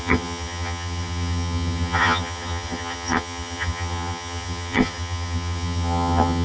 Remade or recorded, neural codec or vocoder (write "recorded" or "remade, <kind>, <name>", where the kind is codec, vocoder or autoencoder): remade, vocoder, HiFi-GAN